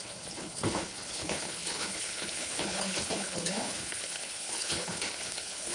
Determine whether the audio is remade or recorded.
remade